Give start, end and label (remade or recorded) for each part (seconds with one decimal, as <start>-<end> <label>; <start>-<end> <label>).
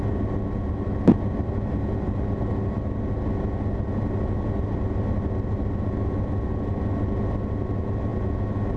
0.0-8.8 recorded